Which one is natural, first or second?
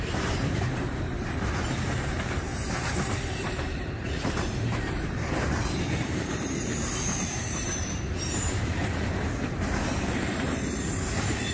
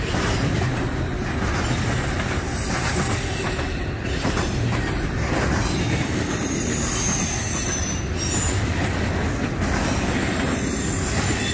second